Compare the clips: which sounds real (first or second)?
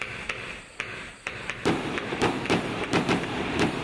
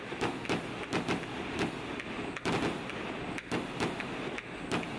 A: second